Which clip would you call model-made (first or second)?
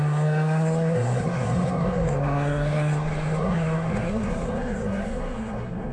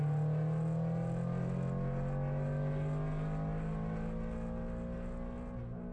first